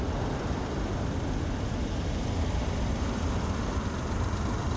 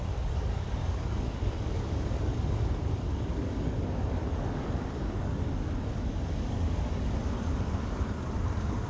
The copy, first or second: second